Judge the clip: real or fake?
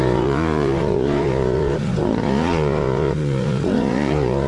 fake